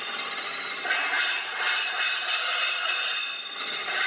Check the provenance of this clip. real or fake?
real